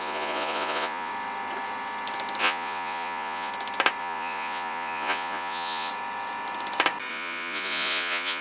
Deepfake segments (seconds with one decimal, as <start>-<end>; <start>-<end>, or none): 0.0-1.1; 2.4-3.5; 4.0-5.9; 7.1-8.4